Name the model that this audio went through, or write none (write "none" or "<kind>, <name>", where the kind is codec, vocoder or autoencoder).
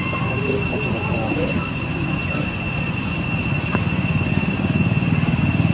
vocoder, Vocos